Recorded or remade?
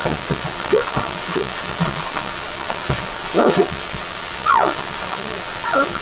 remade